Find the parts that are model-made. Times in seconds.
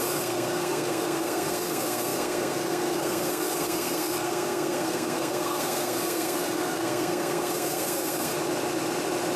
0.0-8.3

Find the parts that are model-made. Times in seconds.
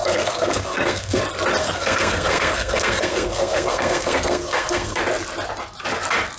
0.0-1.2; 1.6-5.0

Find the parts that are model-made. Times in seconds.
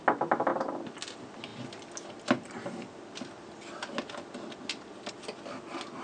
none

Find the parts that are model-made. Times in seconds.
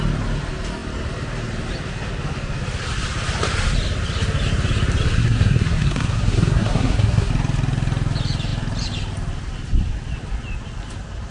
5.2-7.3